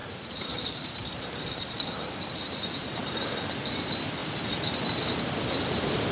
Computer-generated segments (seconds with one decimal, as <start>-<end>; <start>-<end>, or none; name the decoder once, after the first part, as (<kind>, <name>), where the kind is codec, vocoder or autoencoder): 0.0-3.6 (vocoder, BigVGAN v2); 4.2-4.8